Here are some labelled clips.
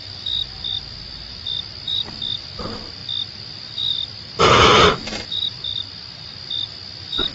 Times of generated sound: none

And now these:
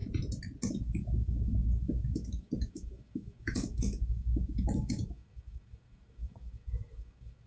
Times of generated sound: 0.7-7.5 (autoencoder, DAC-VAE)